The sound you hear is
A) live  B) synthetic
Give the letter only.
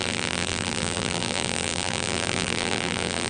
B